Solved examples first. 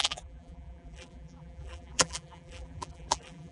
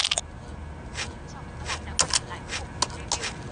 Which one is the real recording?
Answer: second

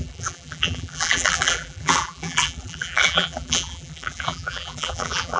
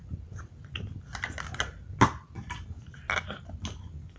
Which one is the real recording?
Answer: second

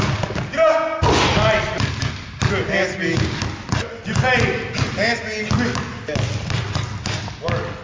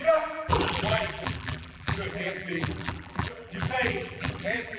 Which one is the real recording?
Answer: first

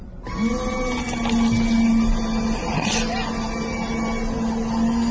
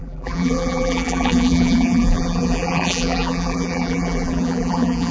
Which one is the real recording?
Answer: first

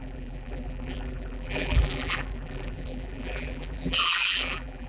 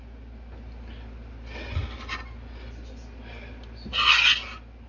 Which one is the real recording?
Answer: second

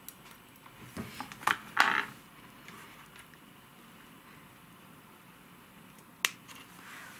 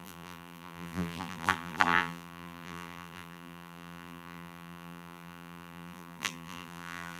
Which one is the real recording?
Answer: first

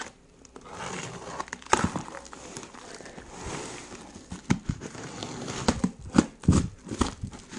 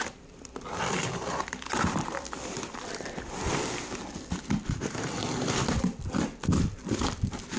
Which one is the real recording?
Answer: first